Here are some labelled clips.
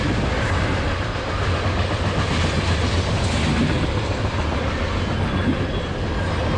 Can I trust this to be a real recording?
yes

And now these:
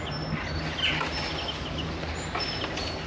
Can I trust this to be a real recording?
yes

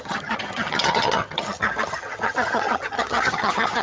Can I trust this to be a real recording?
no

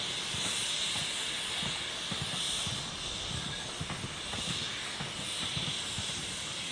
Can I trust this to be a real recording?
yes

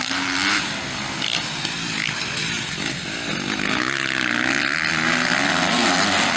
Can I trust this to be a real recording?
yes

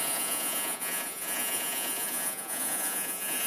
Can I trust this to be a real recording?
no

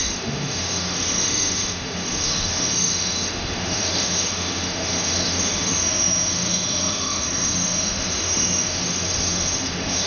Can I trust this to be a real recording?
no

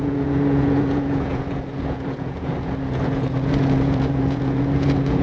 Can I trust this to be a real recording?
no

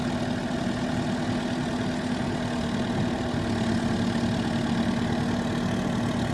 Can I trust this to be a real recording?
yes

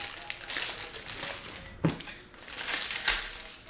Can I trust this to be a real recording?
yes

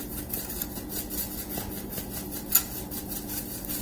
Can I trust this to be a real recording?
yes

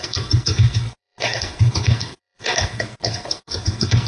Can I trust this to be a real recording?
no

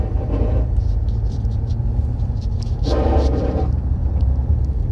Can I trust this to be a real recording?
no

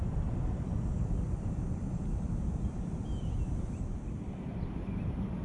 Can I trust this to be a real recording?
no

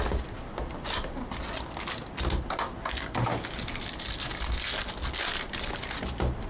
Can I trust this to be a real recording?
yes